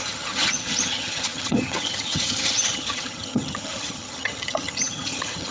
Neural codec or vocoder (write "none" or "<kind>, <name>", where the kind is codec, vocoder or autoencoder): vocoder, HiFi-GAN